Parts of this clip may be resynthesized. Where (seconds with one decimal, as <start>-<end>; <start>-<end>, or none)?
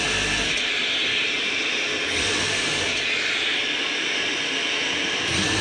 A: none